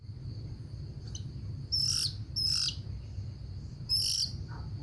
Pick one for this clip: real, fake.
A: real